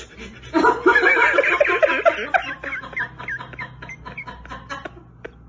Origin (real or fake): real